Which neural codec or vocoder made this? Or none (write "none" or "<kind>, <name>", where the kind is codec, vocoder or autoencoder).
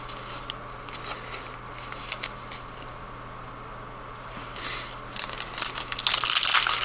none